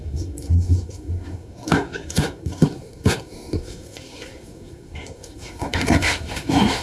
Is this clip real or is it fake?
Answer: fake